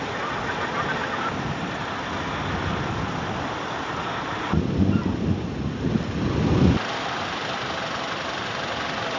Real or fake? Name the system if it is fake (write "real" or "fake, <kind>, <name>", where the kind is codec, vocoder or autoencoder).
real